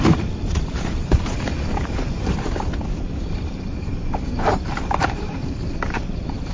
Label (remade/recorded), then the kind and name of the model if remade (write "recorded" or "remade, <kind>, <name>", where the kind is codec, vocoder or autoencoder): remade, vocoder, BigVGAN v2